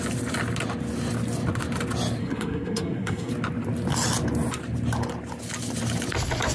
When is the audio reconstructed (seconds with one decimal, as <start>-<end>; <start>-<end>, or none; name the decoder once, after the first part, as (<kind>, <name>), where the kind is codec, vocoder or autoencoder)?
2.2-3.3 (codec, SNAC)